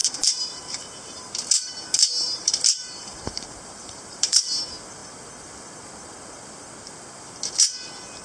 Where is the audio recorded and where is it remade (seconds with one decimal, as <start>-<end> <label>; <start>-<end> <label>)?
0.0-4.5 remade; 4.5-8.2 recorded